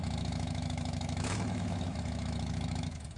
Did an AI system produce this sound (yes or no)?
yes